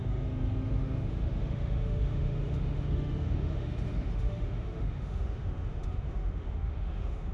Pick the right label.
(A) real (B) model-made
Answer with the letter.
B